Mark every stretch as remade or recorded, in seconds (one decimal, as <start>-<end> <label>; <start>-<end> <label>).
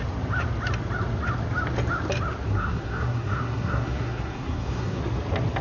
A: 0.0-2.5 recorded; 2.5-5.0 remade; 5.0-5.6 recorded